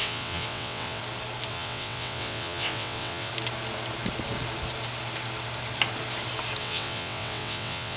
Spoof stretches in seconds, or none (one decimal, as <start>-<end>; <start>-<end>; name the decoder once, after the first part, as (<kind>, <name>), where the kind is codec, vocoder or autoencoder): 0.0-1.0 (vocoder, WaveNeXt); 1.5-3.3; 6.6-8.0